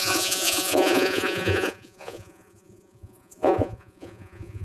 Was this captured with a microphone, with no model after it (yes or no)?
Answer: no